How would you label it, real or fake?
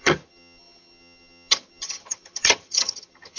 fake